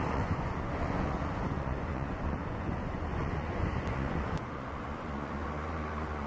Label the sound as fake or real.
fake